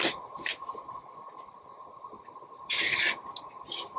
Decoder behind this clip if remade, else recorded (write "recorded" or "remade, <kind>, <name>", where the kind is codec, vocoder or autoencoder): recorded